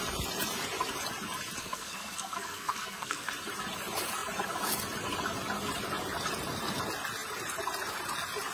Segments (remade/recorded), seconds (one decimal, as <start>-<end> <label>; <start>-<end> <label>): 0.0-1.6 recorded; 1.6-3.3 remade; 3.3-8.5 recorded